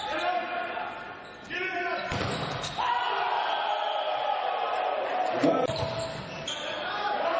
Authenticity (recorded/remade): recorded